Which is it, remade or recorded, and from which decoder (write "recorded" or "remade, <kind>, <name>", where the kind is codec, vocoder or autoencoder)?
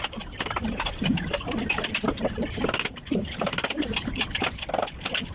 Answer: recorded